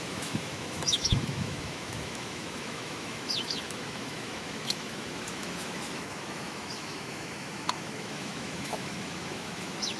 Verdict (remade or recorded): remade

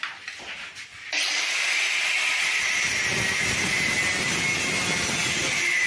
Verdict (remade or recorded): recorded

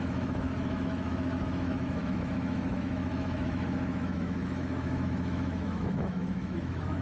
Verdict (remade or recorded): remade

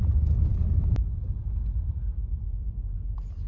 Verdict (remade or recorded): recorded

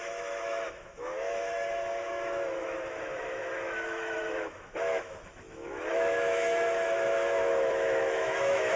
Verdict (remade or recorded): remade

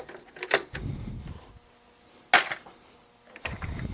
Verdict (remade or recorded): recorded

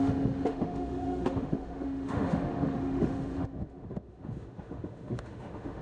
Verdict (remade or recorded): remade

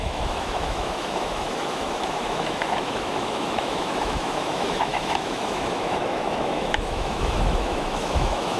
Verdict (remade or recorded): remade